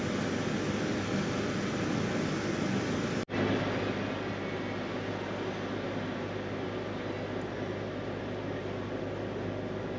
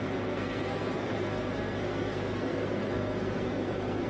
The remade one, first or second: second